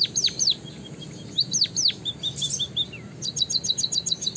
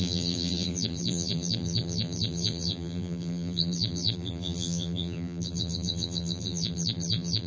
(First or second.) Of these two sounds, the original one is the first